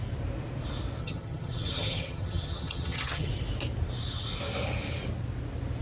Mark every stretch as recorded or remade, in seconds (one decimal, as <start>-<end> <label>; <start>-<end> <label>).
0.0-1.0 recorded; 1.0-3.3 remade; 3.3-5.8 recorded